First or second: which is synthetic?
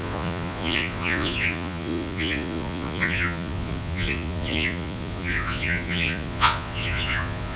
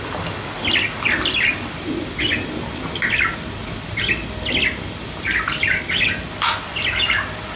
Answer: first